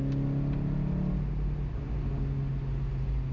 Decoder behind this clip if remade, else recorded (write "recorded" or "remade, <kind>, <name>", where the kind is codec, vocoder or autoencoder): recorded